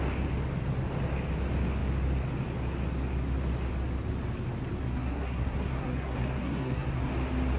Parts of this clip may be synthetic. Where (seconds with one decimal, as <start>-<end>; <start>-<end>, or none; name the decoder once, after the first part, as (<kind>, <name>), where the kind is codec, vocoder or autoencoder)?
4.8-7.1 (codec, SNAC)